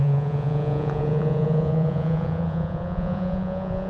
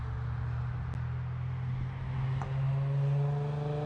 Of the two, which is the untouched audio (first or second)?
second